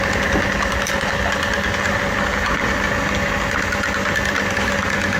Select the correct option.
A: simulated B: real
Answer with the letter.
B